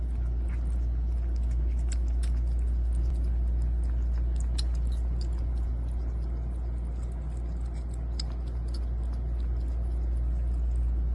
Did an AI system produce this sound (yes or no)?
no